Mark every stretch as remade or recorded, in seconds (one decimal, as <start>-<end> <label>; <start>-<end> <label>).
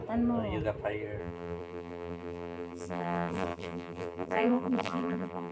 0.0-1.2 recorded; 1.2-5.5 remade